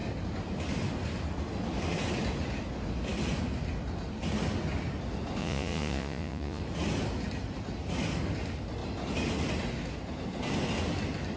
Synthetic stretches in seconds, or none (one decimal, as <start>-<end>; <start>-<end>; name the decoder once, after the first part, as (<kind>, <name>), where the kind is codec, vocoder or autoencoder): 5.4-6.6 (vocoder, Vocos)